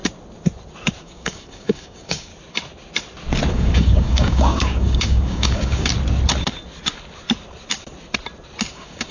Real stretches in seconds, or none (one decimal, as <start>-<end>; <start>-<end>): 0.0-1.0; 2.3-3.5; 5.9-8.7